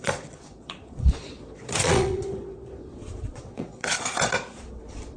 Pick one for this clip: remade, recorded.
remade